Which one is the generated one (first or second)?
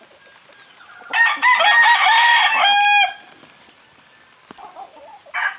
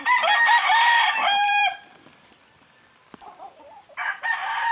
second